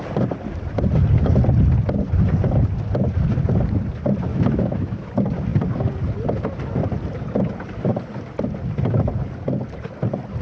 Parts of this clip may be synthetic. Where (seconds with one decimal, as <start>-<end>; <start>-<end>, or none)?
4.3-5.1